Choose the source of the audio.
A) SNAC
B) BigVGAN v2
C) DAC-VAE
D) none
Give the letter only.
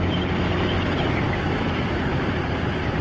D